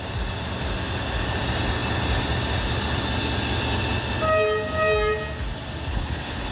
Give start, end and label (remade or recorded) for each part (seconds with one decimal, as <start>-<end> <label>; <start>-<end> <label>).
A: 0.0-5.9 recorded; 5.9-6.5 remade